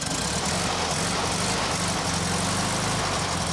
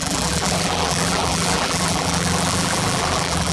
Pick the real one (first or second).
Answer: first